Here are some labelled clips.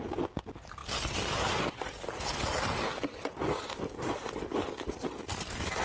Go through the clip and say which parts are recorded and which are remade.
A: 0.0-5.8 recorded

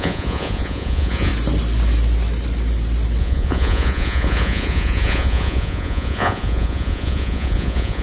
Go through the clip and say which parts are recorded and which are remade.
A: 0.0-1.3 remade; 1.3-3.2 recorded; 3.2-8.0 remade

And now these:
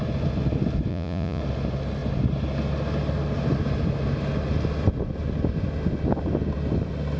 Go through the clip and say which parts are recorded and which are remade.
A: 0.0-0.9 recorded; 0.9-1.4 remade; 1.4-7.2 recorded